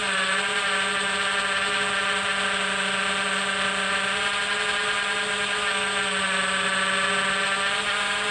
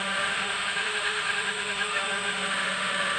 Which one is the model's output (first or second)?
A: second